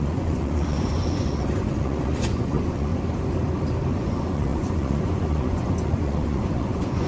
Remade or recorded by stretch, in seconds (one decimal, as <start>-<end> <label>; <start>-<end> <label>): 0.0-2.9 remade; 2.9-3.9 recorded; 3.9-7.1 remade